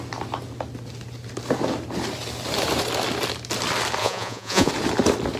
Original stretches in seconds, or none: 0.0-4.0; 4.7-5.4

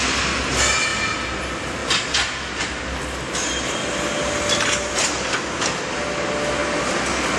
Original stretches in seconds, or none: 0.0-7.4

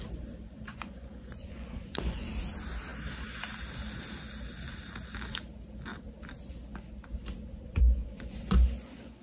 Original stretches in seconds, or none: 0.0-0.7; 2.3-8.0